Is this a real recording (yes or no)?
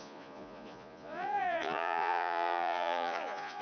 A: no